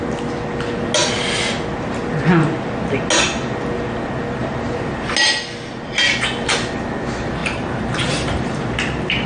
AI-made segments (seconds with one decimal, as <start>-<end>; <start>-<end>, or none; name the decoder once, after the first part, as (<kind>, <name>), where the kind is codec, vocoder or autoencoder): 4.4-5.1 (vocoder, BigVGAN v2); 7.4-8.6

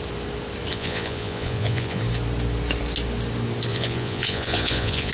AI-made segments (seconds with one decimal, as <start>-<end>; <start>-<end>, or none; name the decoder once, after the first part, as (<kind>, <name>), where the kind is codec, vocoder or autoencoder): 0.7-2.0 (vocoder, Vocos); 3.7-5.1